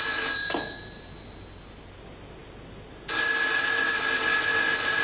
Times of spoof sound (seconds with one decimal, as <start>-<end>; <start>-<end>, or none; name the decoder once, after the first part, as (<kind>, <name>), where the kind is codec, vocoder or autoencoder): none